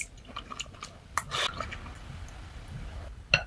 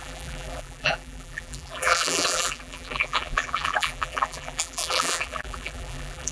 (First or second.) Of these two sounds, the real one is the first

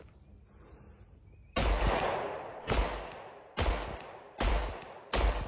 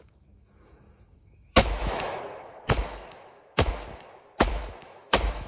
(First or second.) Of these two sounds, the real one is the first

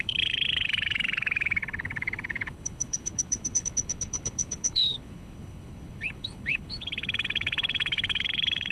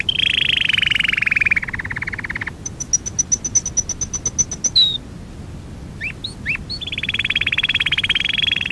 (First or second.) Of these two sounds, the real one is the second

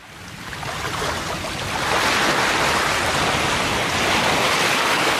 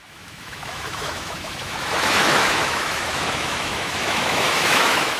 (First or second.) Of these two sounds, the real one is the first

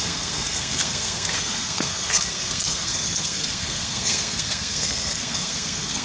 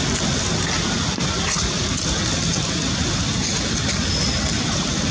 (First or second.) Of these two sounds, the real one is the second